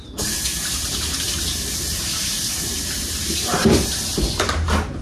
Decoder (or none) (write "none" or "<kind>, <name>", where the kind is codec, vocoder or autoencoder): vocoder, BigVGAN v2